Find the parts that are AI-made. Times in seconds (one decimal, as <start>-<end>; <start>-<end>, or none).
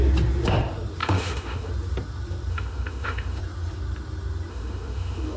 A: 1.0-1.7; 2.5-3.4; 4.5-5.4